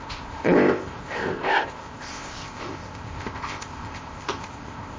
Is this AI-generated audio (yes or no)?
yes